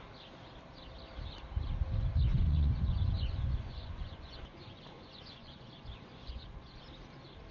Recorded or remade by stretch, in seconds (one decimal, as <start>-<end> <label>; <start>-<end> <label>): 0.0-2.3 recorded; 2.3-6.8 remade; 6.8-7.5 recorded